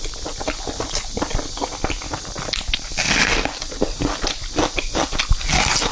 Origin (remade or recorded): recorded